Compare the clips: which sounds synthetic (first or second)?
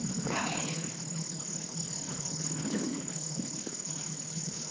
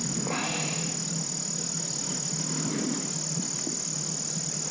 first